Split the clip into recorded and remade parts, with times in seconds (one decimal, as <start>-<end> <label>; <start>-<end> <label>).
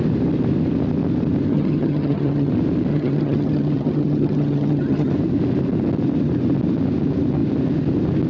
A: 0.0-1.5 recorded; 1.5-2.5 remade; 2.5-2.9 recorded; 2.9-5.1 remade; 5.1-8.3 recorded